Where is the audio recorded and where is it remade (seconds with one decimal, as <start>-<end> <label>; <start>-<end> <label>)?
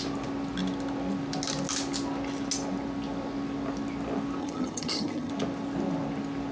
0.0-4.4 recorded; 4.4-5.3 remade; 5.3-6.5 recorded